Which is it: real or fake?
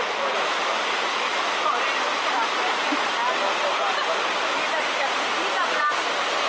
real